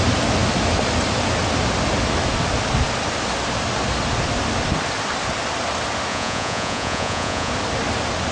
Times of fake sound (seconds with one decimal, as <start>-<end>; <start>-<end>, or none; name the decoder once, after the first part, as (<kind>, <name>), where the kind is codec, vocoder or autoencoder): 6.1-7.5 (vocoder, Vocos)